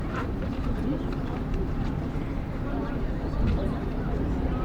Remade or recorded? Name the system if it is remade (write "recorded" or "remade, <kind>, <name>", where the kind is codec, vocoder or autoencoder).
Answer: remade, vocoder, BigVGAN v2